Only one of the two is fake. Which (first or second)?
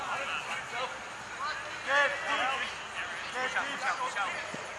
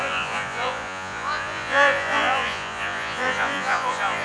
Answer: second